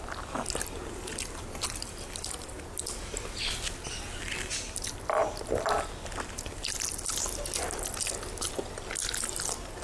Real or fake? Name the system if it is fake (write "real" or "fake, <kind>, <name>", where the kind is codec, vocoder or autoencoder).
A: real